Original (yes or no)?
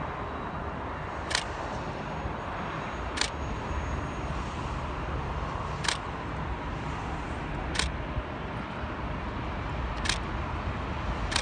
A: yes